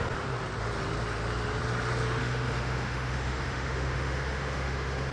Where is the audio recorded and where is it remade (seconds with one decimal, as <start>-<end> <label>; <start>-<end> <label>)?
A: 0.0-2.2 recorded; 2.2-5.1 remade

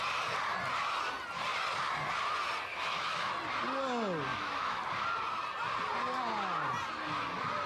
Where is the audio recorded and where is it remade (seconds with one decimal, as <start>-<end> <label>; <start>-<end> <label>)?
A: 0.0-2.7 recorded; 2.7-3.3 remade; 3.3-4.3 recorded; 4.3-4.8 remade; 4.8-7.7 recorded

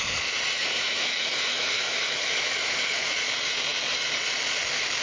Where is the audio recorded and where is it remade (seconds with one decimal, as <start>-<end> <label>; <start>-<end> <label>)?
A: 0.0-0.6 recorded; 0.6-3.2 remade; 3.2-5.0 recorded